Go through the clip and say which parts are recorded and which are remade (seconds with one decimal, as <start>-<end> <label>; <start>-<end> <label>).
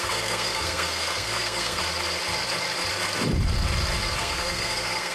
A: 0.0-1.8 remade; 1.8-4.2 recorded; 4.2-5.1 remade